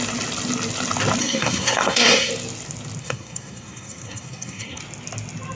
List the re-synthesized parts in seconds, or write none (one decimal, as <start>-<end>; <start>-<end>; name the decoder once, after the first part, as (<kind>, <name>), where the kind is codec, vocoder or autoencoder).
1.2-2.3 (codec, SNAC); 3.0-4.8